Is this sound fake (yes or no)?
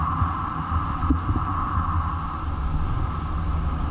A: no